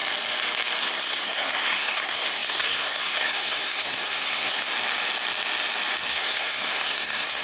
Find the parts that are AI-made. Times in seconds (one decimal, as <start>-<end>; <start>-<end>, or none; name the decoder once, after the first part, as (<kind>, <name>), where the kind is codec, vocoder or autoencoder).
0.8-4.7 (codec, SNAC); 6.1-7.4